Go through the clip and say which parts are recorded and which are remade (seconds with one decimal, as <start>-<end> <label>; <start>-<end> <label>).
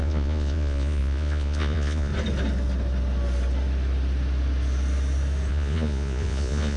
0.0-2.1 remade; 2.1-5.5 recorded; 5.5-6.8 remade